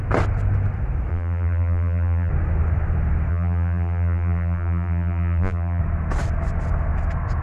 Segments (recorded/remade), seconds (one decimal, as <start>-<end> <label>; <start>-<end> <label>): 0.0-1.1 recorded; 1.1-2.3 remade; 2.3-3.3 recorded; 3.3-5.8 remade; 5.8-7.4 recorded